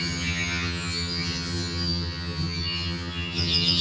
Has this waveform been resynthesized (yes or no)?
yes